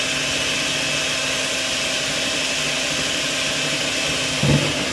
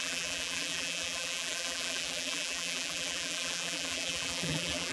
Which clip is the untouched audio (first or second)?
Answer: first